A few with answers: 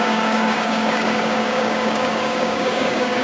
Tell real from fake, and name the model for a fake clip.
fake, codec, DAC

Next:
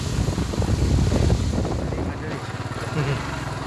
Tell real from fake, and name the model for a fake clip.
real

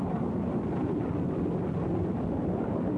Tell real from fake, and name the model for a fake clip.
fake, vocoder, BigVGAN v2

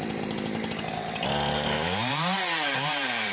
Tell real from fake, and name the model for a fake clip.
fake, vocoder, BigVGAN v2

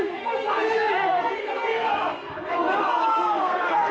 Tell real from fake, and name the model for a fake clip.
fake, codec, SNAC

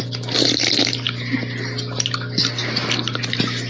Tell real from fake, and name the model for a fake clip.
real